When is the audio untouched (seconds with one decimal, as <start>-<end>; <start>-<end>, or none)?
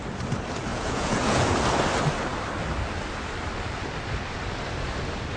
0.0-0.7; 1.6-5.4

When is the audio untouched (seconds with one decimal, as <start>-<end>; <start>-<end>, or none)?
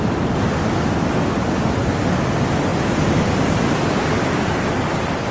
0.0-2.7; 4.5-5.3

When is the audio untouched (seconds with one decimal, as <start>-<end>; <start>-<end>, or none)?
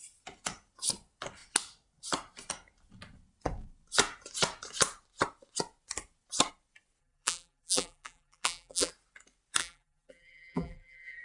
0.0-7.0; 8.9-9.6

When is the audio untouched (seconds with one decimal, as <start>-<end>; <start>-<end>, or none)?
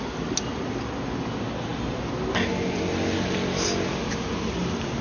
0.0-5.0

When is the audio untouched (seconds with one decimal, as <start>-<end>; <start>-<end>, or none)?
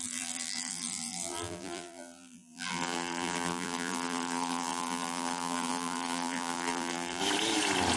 7.2-8.0